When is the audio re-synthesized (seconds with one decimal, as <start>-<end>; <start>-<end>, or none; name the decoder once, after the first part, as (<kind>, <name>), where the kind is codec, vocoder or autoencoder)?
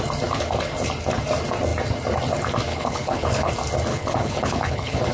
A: 2.7-3.5 (codec, HILCodec); 3.9-5.1